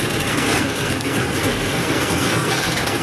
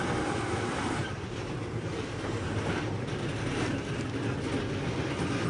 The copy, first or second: first